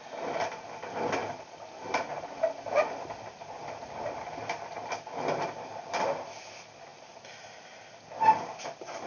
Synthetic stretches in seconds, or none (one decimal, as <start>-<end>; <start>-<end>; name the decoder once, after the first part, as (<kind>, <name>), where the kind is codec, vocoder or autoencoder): none